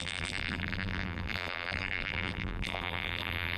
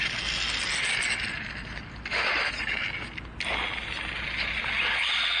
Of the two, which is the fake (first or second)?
first